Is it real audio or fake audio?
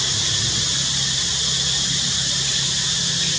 real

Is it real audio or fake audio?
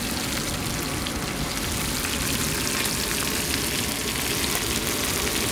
real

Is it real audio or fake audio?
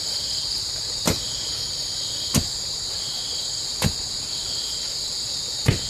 real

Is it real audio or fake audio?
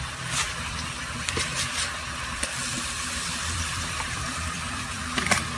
fake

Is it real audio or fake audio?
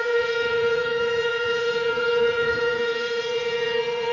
fake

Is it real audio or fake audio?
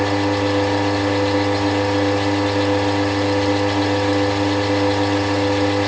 real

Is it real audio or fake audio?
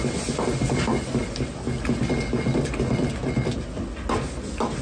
real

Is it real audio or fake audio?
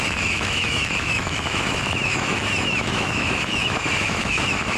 fake